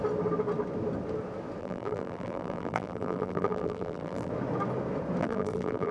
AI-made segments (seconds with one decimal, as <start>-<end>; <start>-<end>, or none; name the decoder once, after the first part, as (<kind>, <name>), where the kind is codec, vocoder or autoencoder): 1.6-4.3 (vocoder, BigVGAN v2); 5.2-5.9